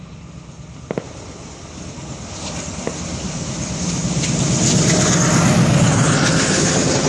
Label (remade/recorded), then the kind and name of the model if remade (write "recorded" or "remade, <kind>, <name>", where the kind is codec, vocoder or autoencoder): recorded